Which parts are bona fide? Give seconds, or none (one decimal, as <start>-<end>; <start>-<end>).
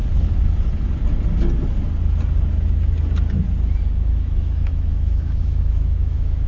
0.0-3.9